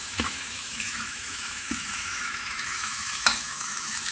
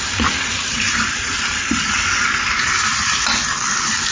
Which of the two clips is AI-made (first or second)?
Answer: first